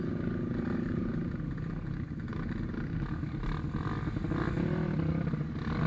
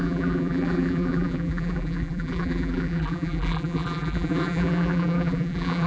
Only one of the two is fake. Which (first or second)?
second